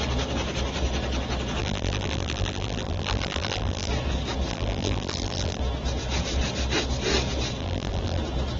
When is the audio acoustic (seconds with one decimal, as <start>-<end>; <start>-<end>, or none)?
0.0-1.6; 3.9-4.5; 5.6-7.6; 8.2-8.6